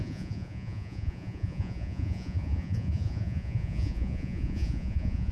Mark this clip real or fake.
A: fake